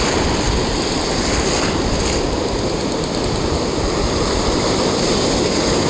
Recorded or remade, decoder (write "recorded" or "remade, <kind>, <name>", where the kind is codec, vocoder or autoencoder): recorded